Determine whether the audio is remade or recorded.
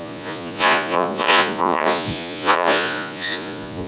remade